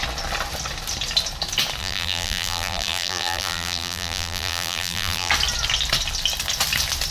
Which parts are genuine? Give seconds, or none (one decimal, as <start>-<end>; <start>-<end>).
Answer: 0.0-1.8; 5.3-7.1